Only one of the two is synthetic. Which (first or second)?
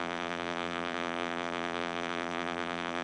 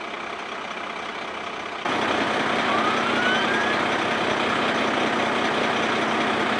first